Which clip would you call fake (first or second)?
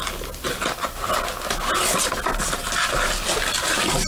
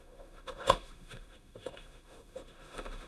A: second